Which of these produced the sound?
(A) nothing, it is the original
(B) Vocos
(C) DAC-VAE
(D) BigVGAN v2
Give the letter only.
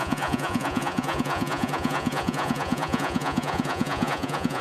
B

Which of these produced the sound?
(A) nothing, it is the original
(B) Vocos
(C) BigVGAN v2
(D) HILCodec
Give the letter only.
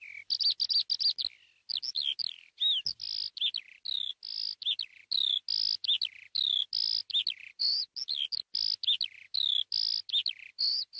A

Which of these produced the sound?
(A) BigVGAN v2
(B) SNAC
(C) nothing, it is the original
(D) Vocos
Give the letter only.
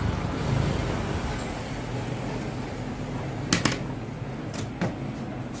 C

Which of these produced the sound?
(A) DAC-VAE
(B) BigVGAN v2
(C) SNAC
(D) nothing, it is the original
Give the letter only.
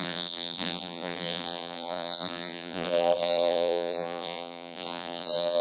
B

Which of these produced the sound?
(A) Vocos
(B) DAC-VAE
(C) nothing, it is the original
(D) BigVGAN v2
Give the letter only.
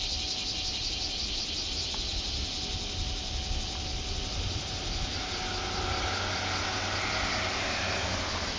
C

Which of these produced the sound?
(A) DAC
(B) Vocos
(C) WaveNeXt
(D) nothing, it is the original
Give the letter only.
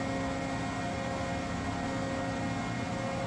D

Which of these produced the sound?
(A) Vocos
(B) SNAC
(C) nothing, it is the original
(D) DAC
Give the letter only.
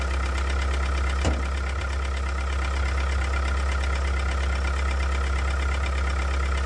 C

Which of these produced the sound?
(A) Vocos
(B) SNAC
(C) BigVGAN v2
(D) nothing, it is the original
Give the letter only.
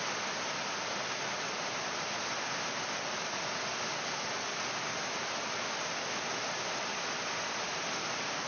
D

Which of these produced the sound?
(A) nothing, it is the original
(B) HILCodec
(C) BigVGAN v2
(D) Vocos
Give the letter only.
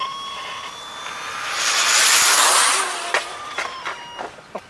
A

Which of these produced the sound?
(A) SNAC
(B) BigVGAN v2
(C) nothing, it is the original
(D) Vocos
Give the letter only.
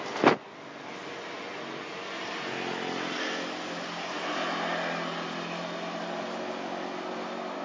C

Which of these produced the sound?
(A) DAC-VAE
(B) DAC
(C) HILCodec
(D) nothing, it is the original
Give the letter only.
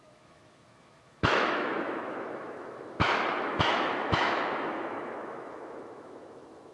A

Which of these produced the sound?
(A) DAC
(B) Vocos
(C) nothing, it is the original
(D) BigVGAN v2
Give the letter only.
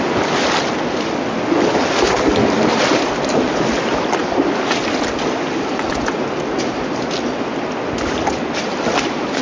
C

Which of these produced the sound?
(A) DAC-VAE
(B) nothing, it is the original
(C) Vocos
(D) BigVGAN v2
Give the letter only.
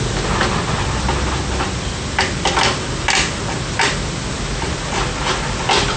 B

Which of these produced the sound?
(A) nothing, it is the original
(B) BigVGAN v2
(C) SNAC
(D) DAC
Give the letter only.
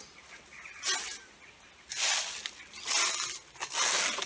A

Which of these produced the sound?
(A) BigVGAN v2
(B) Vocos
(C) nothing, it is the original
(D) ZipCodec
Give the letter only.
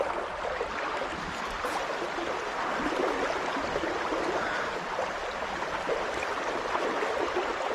C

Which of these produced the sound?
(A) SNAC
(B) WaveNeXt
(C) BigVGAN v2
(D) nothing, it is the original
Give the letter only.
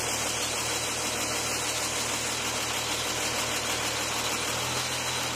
D